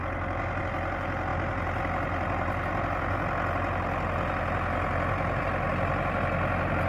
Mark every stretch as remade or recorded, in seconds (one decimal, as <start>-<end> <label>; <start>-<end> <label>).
0.0-6.9 recorded